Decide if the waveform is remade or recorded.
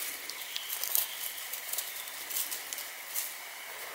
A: recorded